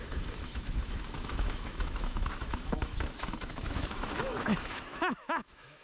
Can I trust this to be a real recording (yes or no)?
no